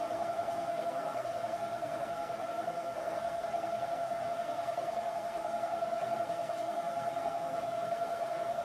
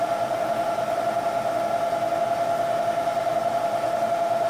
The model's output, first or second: first